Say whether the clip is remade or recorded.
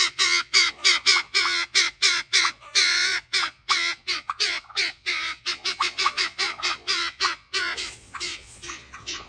remade